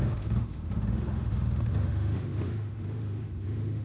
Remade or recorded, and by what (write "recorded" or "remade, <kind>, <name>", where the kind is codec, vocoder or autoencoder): remade, autoencoder, DAC-VAE